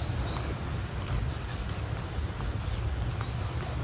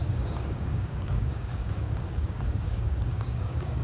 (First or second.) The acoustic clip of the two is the first